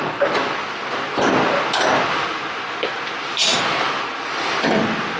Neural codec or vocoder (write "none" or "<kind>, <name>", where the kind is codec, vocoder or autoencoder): none